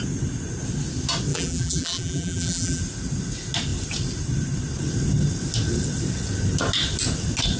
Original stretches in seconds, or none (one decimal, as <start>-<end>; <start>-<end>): 0.0-1.3; 2.8-7.6